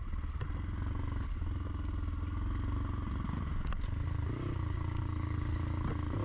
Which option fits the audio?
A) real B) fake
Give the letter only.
A